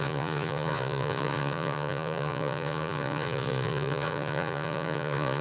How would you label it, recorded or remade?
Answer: remade